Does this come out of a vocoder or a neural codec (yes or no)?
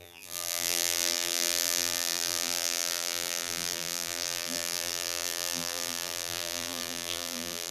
yes